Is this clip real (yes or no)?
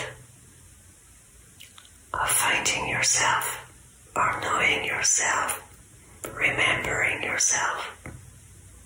yes